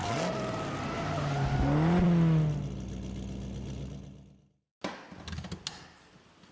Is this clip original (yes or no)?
yes